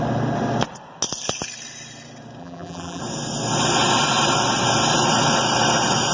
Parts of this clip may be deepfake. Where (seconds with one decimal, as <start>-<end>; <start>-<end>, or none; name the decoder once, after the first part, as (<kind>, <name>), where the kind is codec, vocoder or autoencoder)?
2.4-3.0 (vocoder, BigVGAN v2)